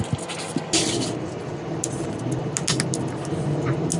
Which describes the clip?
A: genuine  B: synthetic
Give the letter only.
A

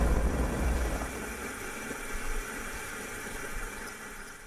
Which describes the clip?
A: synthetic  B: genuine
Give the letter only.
A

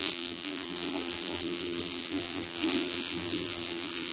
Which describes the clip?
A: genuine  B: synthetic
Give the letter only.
B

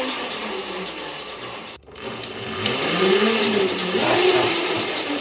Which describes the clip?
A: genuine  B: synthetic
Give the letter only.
B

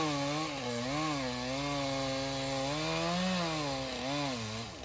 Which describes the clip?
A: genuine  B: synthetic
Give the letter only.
A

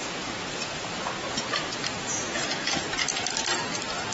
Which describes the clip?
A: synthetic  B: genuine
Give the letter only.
A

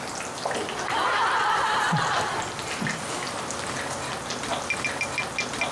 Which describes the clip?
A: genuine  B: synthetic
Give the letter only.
A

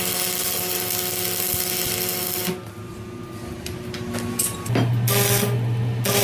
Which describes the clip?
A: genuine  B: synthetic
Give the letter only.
A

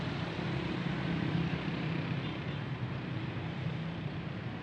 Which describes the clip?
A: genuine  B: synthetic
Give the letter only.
B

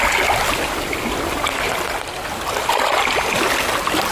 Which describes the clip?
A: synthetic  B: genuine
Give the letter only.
B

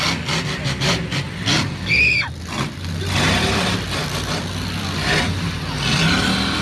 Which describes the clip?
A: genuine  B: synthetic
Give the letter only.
A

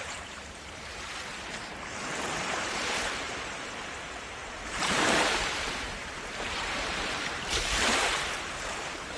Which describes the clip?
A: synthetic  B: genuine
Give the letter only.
A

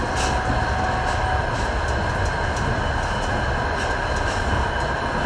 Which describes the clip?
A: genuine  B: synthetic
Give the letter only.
A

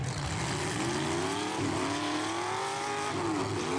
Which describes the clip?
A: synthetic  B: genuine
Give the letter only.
B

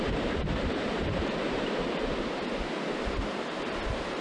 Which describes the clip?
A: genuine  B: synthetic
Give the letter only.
B